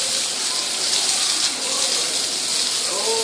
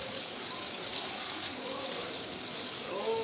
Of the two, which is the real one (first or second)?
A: first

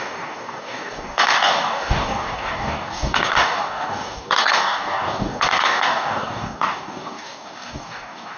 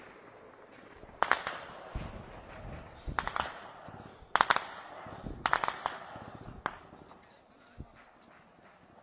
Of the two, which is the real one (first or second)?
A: second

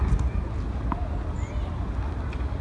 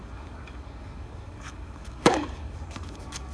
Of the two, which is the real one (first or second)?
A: first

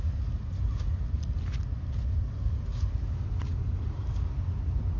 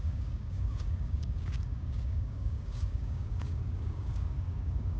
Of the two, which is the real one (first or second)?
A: first